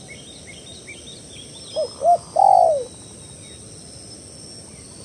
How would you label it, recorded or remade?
recorded